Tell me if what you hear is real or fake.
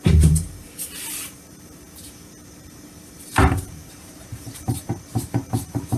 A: fake